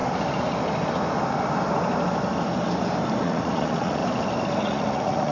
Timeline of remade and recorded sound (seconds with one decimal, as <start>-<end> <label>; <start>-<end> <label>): 0.0-3.2 recorded; 3.2-4.0 remade; 4.0-4.6 recorded; 4.6-5.3 remade